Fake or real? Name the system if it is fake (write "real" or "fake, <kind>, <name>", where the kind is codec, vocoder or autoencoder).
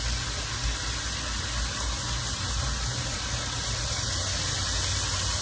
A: real